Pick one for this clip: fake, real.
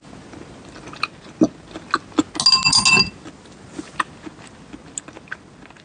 real